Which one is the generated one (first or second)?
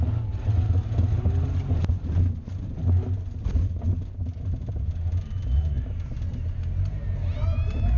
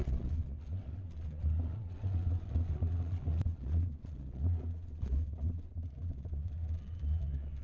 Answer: second